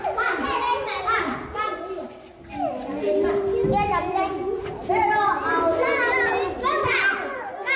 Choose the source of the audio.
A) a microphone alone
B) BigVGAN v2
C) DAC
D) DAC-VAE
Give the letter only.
A